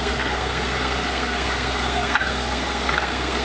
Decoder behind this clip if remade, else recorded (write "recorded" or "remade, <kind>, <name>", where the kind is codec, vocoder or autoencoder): remade, codec, SNAC